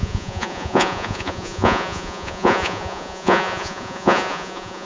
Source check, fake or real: fake